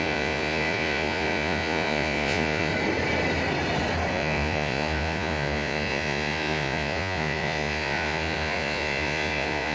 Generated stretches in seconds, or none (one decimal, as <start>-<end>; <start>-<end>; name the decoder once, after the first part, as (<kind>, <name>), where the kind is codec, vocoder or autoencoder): 0.0-2.7 (vocoder, Vocos); 4.1-9.7